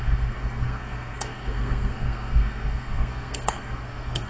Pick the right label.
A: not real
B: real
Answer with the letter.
A